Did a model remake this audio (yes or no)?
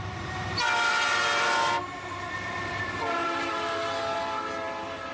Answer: yes